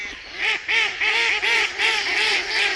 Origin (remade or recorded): remade